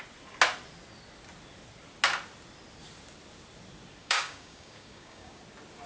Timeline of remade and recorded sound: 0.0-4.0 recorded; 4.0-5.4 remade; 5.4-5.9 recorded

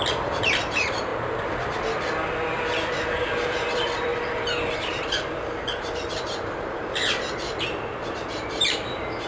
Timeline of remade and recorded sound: 0.0-1.1 remade; 1.1-2.6 recorded; 2.6-9.3 remade

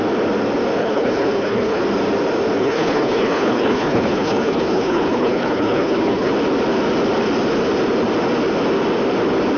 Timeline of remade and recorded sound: 0.0-0.8 recorded; 0.8-1.8 remade; 1.8-2.6 recorded; 2.6-6.3 remade; 6.3-9.6 recorded

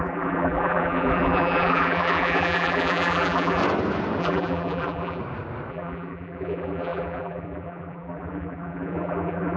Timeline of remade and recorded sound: 0.0-3.6 remade; 3.6-4.2 recorded; 4.2-5.2 remade; 5.2-5.7 recorded; 5.7-9.6 remade

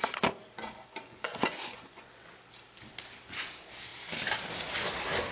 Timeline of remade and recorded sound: 0.0-0.6 recorded; 0.6-2.3 remade; 2.3-5.3 recorded

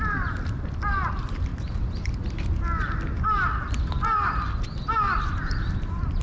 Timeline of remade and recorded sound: 0.0-1.5 remade; 1.5-5.2 recorded; 5.2-6.2 remade